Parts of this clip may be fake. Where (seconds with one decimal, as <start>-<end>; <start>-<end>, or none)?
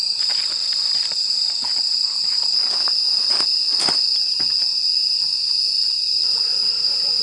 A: 0.0-1.7; 4.2-6.5